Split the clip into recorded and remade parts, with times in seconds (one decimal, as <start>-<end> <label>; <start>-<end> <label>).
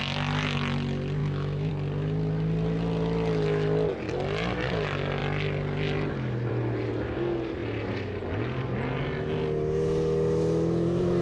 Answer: 0.0-1.2 recorded; 1.2-1.7 remade; 1.7-11.2 recorded